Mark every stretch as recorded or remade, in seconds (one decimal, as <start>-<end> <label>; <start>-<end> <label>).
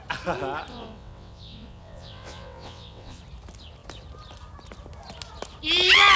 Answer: 0.0-0.7 recorded; 0.7-3.2 remade; 3.2-6.2 recorded